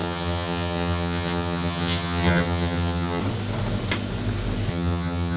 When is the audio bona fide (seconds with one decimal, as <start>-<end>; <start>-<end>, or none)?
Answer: 3.2-4.7